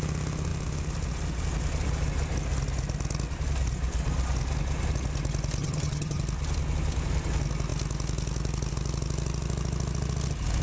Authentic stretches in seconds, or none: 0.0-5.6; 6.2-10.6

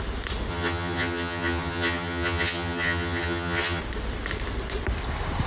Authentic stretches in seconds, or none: 0.0-0.5; 3.8-5.5

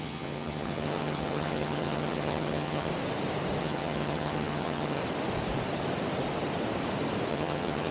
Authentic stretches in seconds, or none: 2.9-3.6; 5.0-7.3

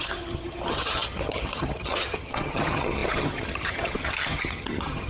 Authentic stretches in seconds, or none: none

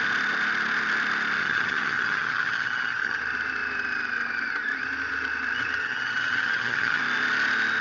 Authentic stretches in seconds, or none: 0.0-1.4; 3.2-5.8; 7.0-7.8

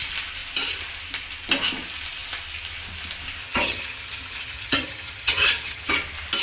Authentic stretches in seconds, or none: 0.0-3.4; 5.9-6.4

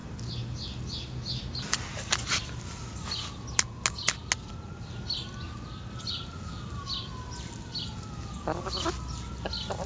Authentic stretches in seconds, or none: 0.0-9.9